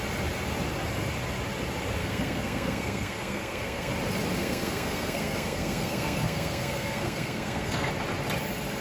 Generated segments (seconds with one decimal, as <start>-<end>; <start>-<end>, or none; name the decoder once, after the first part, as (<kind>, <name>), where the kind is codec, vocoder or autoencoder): 2.0-3.9 (codec, SNAC); 4.4-7.9